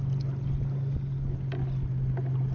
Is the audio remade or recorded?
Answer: recorded